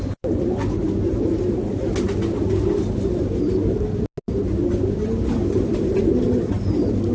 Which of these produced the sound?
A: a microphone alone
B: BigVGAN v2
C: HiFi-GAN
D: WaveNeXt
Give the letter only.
A